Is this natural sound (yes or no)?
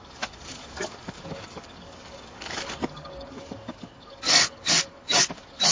no